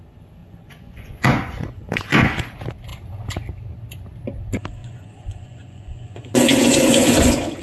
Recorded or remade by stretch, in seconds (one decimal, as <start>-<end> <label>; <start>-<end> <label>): 0.0-0.4 recorded; 0.4-2.5 remade; 2.5-4.8 recorded; 4.8-7.6 remade